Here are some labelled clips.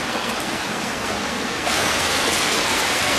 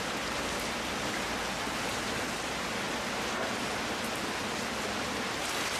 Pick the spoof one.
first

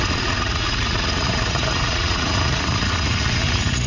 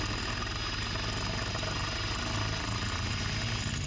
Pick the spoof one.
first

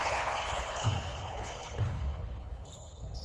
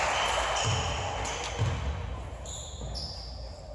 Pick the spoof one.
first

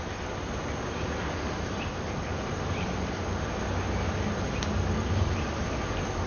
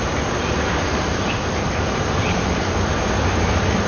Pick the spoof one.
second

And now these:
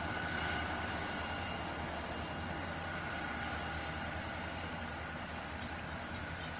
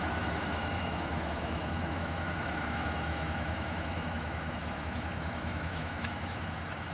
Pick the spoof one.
second